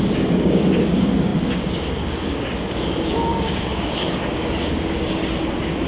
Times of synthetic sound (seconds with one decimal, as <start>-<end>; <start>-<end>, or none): 0.0-5.2